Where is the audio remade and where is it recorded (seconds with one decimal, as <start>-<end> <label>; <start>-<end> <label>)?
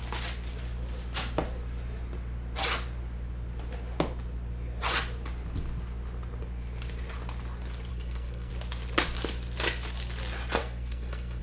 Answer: 0.0-7.9 recorded; 7.9-8.5 remade; 8.5-10.6 recorded; 10.6-11.4 remade